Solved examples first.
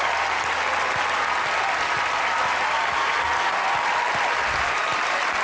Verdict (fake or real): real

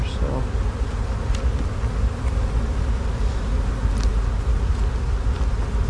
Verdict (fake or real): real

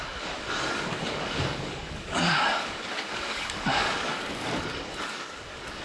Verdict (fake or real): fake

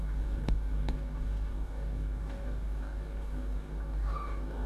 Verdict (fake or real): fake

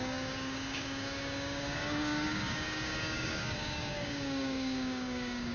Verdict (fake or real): fake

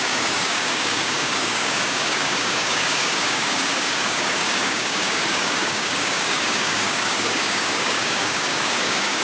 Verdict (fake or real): fake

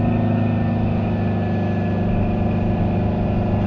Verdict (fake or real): real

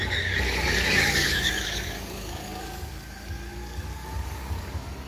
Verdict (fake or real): fake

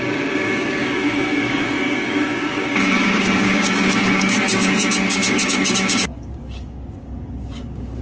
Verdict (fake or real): fake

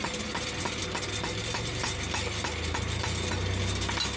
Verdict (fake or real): real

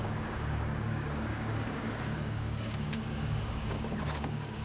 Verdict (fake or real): fake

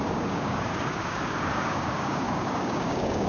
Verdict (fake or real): fake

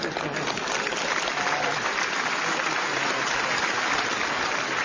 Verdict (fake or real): real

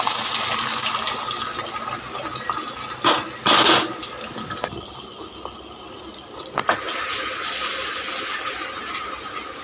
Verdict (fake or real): real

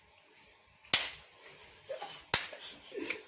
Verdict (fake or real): real